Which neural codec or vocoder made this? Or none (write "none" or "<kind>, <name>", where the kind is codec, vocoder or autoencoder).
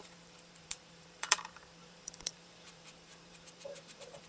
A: vocoder, BigVGAN v2